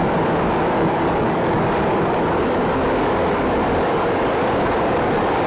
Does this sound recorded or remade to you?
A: remade